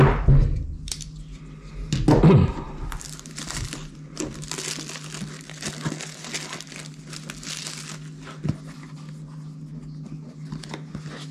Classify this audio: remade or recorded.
recorded